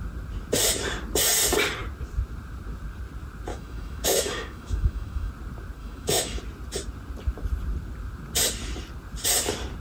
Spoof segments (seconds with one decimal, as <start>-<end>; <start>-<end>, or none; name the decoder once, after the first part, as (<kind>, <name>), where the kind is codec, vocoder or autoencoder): 3.5-5.3 (autoencoder, DAC-VAE); 5.8-6.4